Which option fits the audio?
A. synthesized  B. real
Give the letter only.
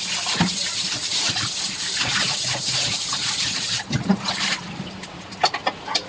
B